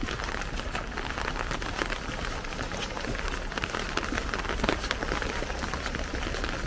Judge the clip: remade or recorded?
recorded